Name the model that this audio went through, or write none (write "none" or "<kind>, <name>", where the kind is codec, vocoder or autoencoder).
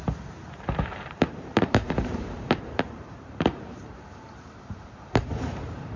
vocoder, BigVGAN v2